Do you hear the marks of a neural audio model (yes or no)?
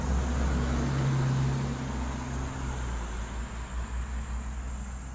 no